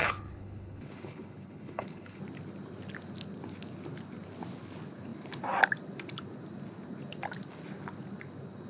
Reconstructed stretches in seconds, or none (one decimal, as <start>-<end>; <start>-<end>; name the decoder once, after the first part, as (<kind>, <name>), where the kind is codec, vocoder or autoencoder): 0.0-2.2 (codec, HILCodec)